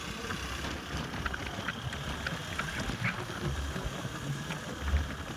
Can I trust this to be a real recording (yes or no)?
yes